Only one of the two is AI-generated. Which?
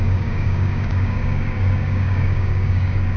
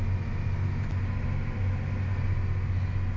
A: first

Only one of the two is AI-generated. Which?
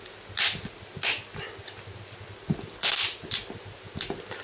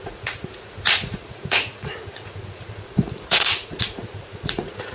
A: second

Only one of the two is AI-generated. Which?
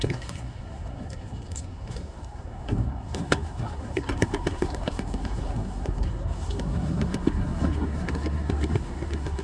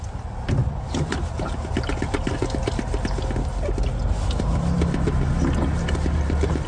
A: first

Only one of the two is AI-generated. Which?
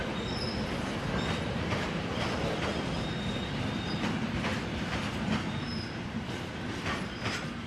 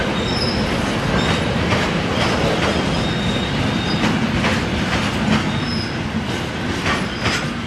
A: first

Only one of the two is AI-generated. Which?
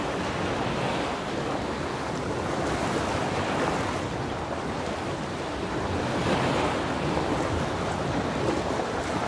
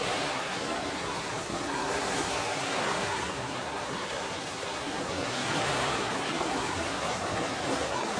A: second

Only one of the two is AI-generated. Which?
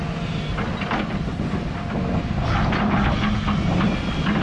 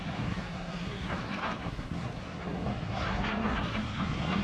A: second